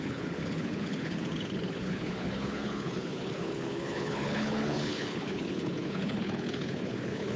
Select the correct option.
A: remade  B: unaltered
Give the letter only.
A